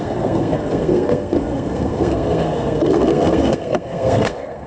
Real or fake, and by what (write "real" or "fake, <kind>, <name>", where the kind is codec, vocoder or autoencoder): fake, codec, SNAC